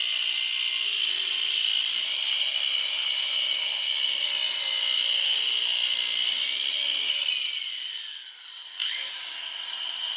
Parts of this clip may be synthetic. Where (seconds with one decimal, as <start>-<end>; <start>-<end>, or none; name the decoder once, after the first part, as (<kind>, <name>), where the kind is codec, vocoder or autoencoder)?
none